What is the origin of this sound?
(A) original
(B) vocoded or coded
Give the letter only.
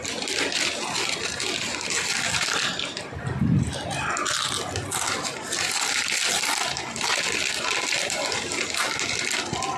A